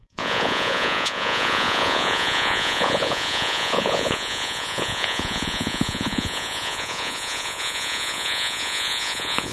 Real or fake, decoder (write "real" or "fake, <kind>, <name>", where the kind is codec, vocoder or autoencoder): fake, vocoder, Vocos